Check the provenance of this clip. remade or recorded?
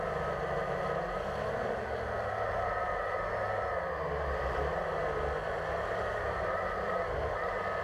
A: recorded